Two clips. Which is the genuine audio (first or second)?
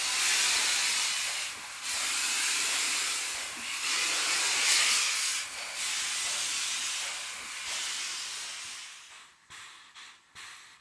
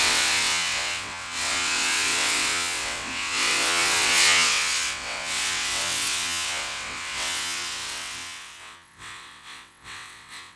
first